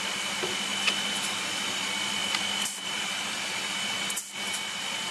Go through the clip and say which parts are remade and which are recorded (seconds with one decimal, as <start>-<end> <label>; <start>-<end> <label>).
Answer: 0.0-5.1 recorded

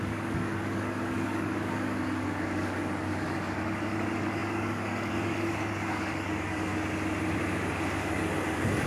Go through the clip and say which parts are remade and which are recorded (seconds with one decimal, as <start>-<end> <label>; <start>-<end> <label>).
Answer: 0.0-6.7 remade; 6.7-8.0 recorded; 8.0-8.9 remade

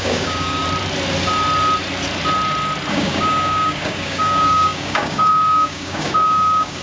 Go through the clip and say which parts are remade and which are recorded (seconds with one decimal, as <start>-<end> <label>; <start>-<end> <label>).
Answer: 0.0-0.6 remade; 0.6-2.9 recorded; 2.9-6.8 remade

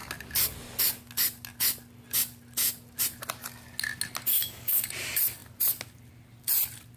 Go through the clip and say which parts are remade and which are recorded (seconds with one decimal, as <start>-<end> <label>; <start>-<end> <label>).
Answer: 0.0-4.3 recorded; 4.3-4.9 remade; 4.9-7.0 recorded

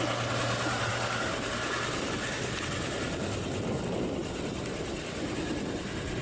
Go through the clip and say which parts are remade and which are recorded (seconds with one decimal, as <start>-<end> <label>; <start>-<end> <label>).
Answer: 0.0-0.9 recorded; 0.9-2.5 remade; 2.5-6.2 recorded

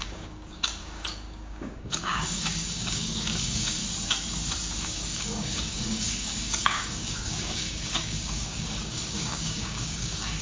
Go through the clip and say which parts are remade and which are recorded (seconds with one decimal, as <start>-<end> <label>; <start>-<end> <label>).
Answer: 0.0-3.8 remade; 3.8-4.8 recorded; 4.8-10.4 remade